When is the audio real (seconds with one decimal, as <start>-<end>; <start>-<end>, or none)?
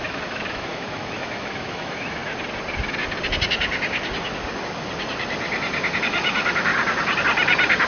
2.2-6.0; 6.7-7.9